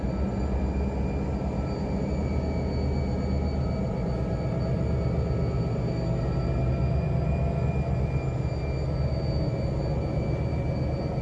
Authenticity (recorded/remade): recorded